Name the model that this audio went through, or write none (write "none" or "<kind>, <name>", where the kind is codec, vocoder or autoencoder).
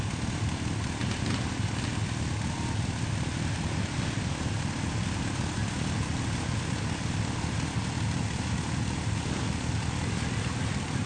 none